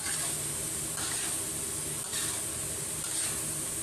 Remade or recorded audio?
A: recorded